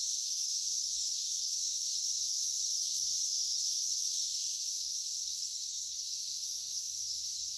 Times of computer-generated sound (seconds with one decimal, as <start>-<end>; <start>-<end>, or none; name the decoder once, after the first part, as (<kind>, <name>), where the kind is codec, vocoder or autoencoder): 0.0-7.6 (codec, SNAC)